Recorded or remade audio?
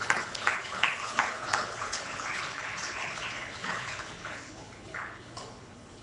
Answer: remade